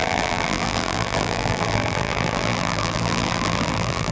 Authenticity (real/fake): fake